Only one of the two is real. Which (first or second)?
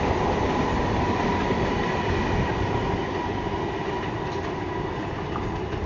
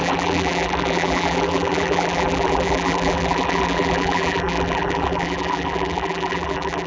first